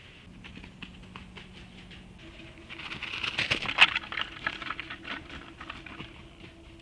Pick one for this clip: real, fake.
real